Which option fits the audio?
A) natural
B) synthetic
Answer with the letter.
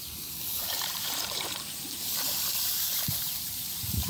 B